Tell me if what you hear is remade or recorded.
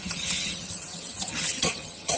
remade